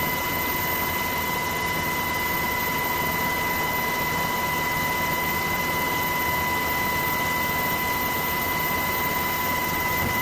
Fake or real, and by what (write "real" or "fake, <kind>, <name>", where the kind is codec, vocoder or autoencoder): real